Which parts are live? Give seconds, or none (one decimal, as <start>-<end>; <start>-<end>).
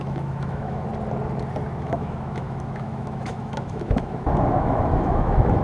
0.9-1.8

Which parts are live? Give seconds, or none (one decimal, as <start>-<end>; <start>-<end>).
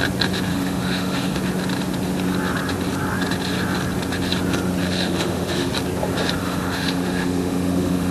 0.0-0.5; 1.4-4.8; 5.7-6.4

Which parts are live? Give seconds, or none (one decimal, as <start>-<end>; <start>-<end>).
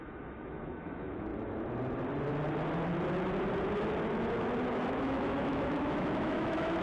1.3-4.9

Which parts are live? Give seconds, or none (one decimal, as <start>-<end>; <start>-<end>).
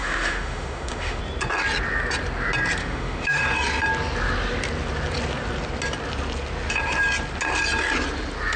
1.2-2.8; 3.4-8.6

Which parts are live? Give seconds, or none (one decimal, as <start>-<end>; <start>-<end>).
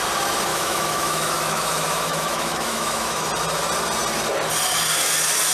0.0-0.5; 3.3-5.5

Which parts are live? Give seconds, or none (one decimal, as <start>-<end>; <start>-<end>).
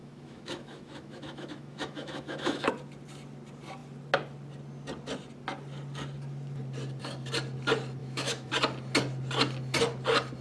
2.7-8.0; 8.5-10.4